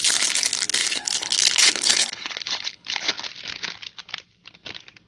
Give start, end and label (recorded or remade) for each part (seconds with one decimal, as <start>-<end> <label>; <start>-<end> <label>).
0.0-0.8 recorded; 0.8-3.1 remade; 3.1-5.1 recorded